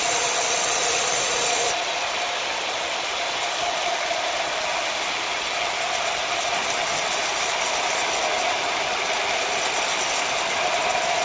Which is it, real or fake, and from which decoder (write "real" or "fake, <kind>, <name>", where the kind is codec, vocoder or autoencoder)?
real